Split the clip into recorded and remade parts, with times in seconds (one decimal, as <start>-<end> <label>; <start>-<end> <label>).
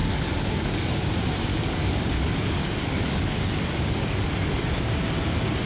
0.0-0.8 remade; 0.8-1.5 recorded; 1.5-4.9 remade; 4.9-5.7 recorded